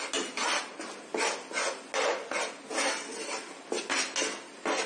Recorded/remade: recorded